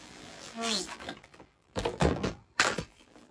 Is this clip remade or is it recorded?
remade